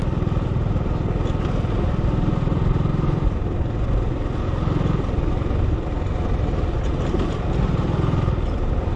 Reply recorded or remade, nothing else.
recorded